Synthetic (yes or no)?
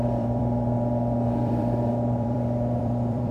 yes